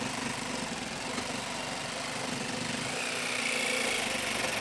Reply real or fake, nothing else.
real